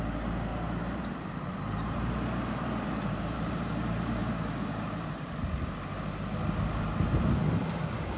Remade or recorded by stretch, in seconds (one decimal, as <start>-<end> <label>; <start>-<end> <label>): 0.0-0.5 recorded; 0.5-5.3 remade; 5.3-8.2 recorded